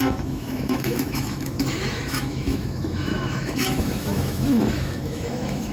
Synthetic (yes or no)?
yes